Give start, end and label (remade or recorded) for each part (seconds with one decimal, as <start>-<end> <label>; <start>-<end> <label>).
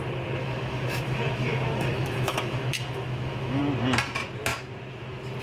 0.0-0.4 recorded; 0.4-3.6 remade; 3.6-5.4 recorded